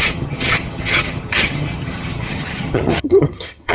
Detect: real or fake fake